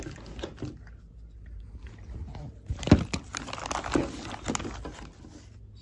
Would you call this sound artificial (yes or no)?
no